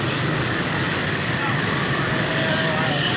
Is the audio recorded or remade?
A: remade